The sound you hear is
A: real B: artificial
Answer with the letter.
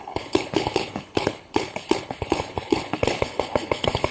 B